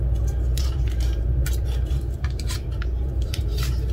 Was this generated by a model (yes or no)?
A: yes